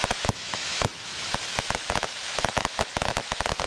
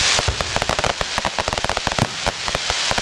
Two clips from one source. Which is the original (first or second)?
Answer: second